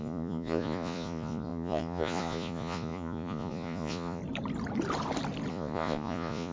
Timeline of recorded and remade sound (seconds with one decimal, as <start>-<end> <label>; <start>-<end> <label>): 0.0-4.2 remade; 4.2-5.5 recorded; 5.5-6.5 remade